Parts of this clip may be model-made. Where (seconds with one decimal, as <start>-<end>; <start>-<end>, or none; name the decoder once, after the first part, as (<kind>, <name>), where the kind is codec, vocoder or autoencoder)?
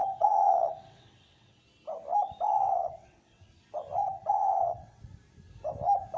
0.0-1.6 (vocoder, WaveNeXt); 2.5-3.5; 4.0-5.0